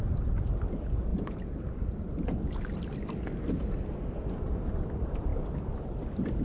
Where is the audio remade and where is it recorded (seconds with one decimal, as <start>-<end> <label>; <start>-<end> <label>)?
0.0-6.4 recorded